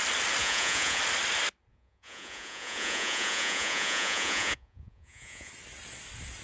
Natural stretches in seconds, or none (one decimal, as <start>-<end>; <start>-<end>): 0.0-0.4; 1.0-1.7; 5.5-6.4